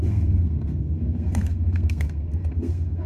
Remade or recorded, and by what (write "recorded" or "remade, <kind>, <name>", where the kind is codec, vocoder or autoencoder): remade, codec, SNAC